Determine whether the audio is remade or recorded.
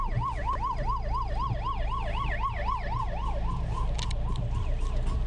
recorded